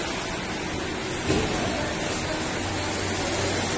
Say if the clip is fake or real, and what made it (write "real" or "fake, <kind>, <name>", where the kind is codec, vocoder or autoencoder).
real